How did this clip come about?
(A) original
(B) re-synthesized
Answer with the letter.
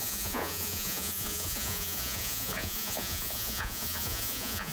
B